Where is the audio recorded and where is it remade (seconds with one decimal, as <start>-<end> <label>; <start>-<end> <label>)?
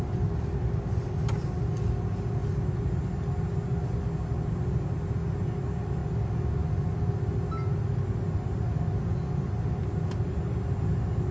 0.0-11.3 recorded